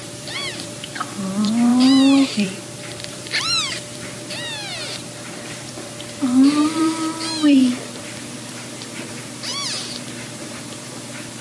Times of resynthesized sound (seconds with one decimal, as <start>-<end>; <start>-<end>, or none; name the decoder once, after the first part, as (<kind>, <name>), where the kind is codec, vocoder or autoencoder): 0.0-11.4 (vocoder, BigVGAN v2)